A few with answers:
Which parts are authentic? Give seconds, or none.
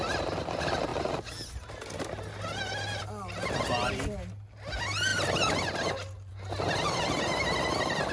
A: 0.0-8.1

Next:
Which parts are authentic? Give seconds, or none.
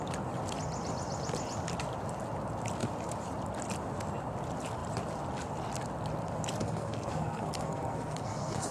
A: 0.0-6.6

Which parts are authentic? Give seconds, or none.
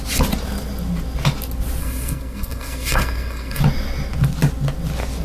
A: 0.0-1.8; 3.6-5.2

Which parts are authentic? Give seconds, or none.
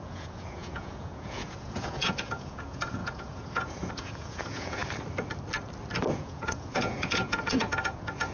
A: 4.8-6.1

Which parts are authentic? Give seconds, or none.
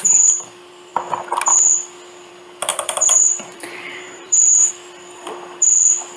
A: 0.0-2.7; 4.7-6.2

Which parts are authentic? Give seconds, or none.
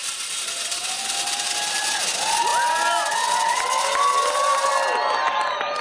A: 0.0-5.8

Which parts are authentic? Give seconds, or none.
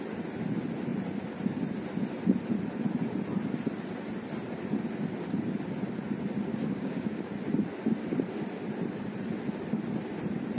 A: 0.0-6.5; 7.2-10.6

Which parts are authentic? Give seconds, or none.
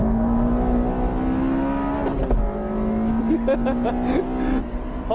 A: 0.0-5.1